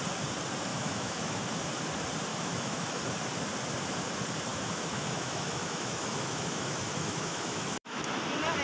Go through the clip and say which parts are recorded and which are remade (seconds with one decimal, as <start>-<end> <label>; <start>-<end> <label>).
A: 0.0-0.7 recorded; 0.7-1.4 remade; 1.4-2.3 recorded; 2.3-3.0 remade; 3.0-4.5 recorded; 4.5-8.0 remade; 8.0-8.6 recorded